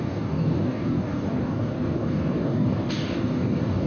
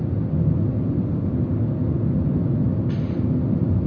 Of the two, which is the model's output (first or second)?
first